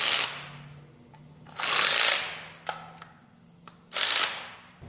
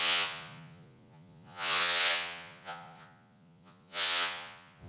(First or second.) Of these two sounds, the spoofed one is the second